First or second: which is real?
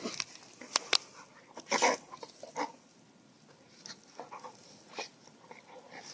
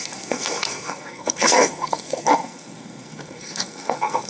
first